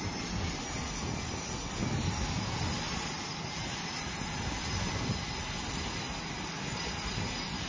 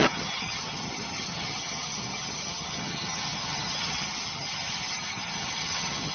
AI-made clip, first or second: second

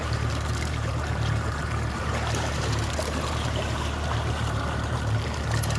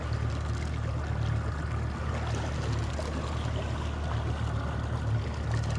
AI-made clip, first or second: first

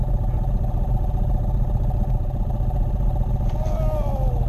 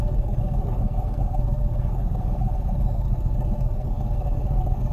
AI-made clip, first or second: second